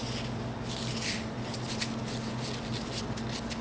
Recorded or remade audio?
recorded